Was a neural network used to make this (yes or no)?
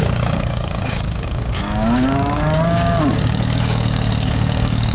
yes